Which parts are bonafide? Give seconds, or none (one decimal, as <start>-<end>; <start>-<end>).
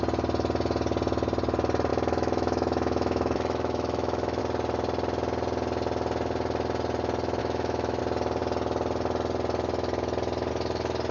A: 0.0-1.9; 4.4-7.4; 8.0-11.1